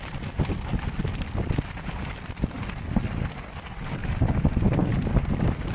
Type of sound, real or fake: real